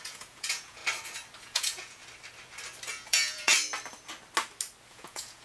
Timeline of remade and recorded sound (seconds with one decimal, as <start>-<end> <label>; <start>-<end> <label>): 0.0-0.8 remade; 0.8-1.4 recorded; 1.4-2.0 remade; 2.0-2.9 recorded; 2.9-3.5 remade; 3.5-4.9 recorded; 4.9-5.4 remade